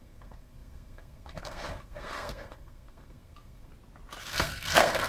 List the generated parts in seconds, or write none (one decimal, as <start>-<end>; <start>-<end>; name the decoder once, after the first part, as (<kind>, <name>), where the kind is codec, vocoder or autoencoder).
0.0-3.7 (codec, SNAC); 4.2-5.1